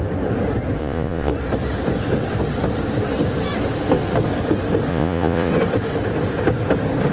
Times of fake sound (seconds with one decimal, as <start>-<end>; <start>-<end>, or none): 0.8-1.3; 4.9-5.5